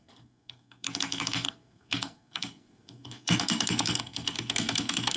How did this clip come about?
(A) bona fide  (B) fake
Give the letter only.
B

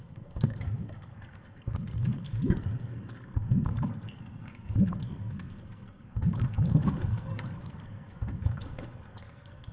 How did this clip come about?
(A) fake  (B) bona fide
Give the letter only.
A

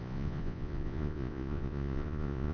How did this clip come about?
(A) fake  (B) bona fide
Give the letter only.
A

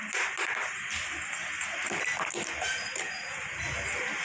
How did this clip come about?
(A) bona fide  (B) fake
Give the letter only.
A